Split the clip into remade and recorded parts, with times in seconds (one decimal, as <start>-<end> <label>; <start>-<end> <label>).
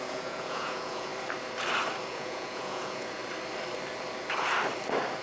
0.0-1.1 remade; 1.1-2.1 recorded; 2.1-3.2 remade; 3.2-5.2 recorded